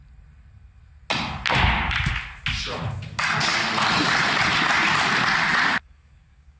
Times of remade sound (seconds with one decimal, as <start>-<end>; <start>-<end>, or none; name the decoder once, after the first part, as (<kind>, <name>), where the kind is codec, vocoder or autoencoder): 5.7-6.6 (codec, DAC)